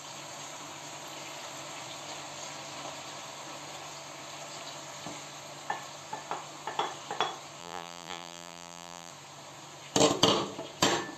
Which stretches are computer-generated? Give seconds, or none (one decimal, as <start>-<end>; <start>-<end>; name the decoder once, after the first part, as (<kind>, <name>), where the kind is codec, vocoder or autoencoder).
7.6-9.1 (vocoder, BigVGAN v2)